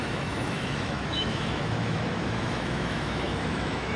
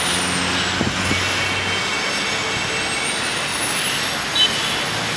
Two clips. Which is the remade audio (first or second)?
first